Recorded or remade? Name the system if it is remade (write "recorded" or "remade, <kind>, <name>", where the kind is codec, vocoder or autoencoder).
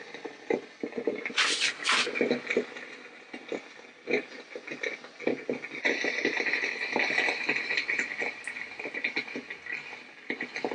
recorded